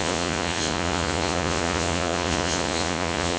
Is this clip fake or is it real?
fake